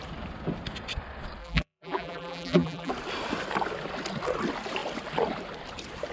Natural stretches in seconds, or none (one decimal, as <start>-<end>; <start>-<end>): 0.0-1.4; 2.9-6.1